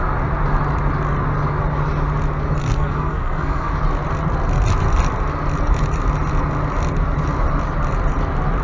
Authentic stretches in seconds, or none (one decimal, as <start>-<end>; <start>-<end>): 0.0-2.6; 3.7-8.6